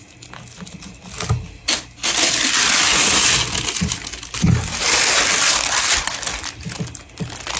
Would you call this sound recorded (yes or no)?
yes